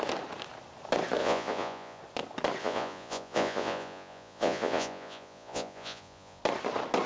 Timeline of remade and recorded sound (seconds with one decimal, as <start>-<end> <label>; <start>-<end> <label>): 0.0-1.2 recorded; 1.2-2.0 remade; 2.0-2.6 recorded; 2.6-6.4 remade; 6.4-7.1 recorded